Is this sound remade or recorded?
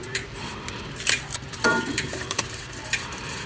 remade